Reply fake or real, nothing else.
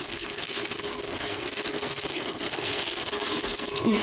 fake